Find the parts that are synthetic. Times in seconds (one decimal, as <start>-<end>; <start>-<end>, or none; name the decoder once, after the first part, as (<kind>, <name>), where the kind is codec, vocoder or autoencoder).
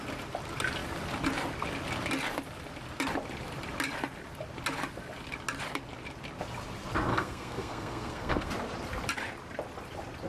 7.1-8.5 (codec, SNAC)